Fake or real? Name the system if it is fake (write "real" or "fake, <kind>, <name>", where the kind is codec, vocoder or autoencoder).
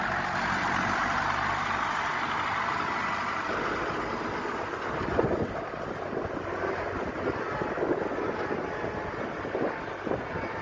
real